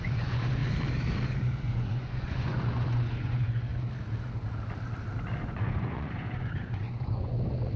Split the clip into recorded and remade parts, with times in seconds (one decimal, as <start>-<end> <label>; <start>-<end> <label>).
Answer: 0.0-0.6 remade; 0.6-1.6 recorded; 1.6-3.7 remade; 3.7-5.4 recorded; 5.4-7.8 remade